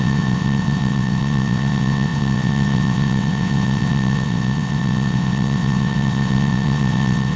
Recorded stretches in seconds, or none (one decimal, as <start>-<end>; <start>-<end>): none